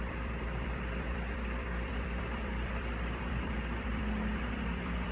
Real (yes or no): no